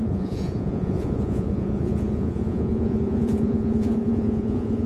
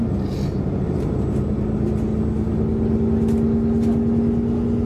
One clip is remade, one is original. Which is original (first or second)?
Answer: second